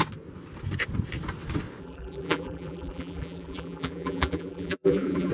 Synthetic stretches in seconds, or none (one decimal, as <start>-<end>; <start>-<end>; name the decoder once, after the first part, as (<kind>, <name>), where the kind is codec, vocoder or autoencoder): 1.8-5.3 (vocoder, BigVGAN v2)